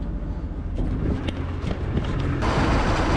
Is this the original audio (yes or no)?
yes